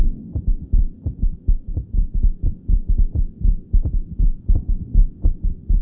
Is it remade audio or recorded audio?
recorded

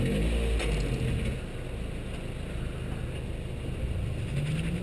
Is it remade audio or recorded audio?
recorded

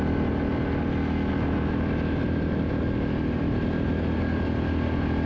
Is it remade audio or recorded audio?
recorded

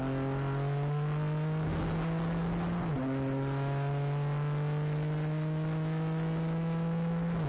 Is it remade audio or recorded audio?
recorded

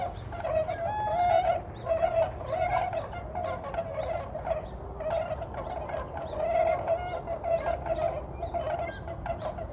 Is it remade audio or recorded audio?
recorded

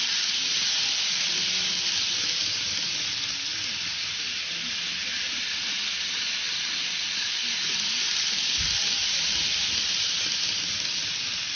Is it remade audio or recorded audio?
recorded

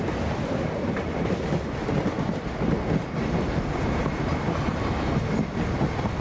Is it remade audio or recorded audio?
recorded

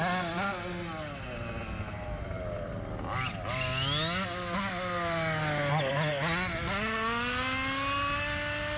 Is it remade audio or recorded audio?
recorded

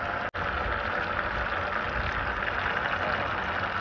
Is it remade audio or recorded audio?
recorded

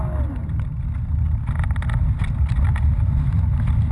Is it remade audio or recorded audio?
recorded